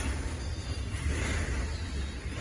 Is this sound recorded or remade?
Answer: recorded